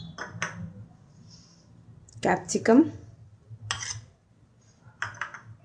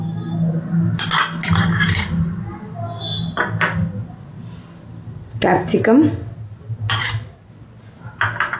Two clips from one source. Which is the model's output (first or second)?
first